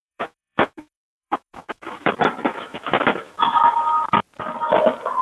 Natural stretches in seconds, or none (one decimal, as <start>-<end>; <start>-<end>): 2.1-2.5; 3.6-5.2